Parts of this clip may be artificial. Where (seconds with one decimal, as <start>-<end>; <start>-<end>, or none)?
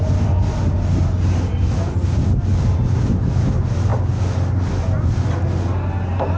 none